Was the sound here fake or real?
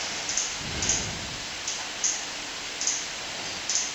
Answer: real